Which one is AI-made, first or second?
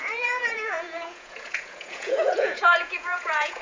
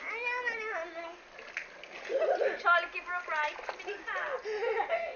first